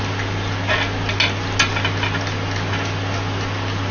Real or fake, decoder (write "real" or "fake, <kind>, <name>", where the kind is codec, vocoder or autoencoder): real